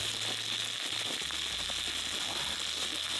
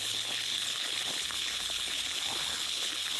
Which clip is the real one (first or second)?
first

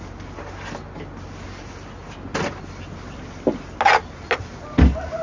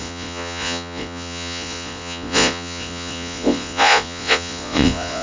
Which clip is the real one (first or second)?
first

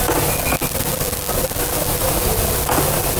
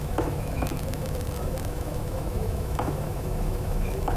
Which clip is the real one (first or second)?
first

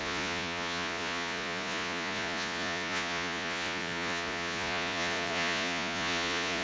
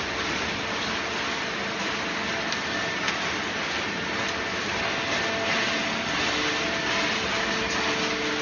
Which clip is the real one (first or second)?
second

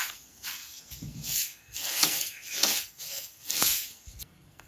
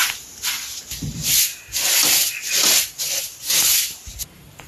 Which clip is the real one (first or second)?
second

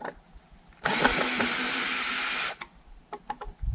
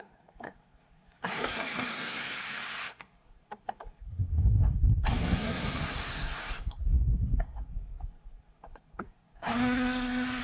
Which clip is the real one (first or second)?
first